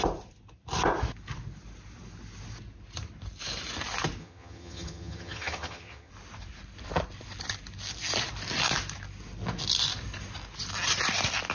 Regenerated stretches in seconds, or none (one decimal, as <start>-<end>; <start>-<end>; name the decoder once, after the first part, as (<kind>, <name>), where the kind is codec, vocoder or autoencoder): 4.2-6.1 (vocoder, HiFi-GAN)